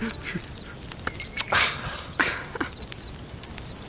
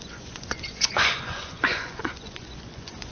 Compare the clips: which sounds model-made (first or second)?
second